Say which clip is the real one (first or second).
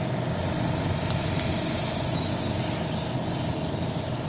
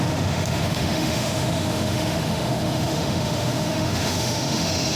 first